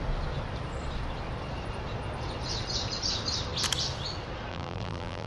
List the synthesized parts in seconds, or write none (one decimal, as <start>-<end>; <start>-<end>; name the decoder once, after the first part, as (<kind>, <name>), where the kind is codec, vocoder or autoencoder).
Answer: 4.5-5.3 (vocoder, BigVGAN v2)